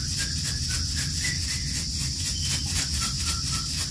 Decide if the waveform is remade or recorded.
recorded